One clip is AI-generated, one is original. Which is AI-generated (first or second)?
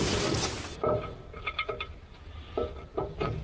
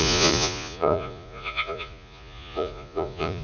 second